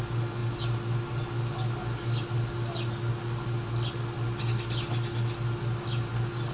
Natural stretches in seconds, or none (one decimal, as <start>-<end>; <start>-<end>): 0.0-6.5